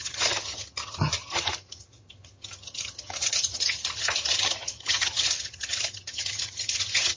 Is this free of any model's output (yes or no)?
no